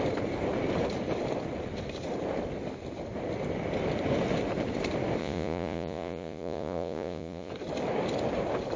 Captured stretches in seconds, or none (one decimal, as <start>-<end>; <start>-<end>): 0.0-5.2; 7.5-8.8